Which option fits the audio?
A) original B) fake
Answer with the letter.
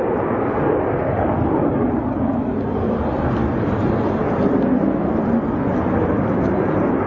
A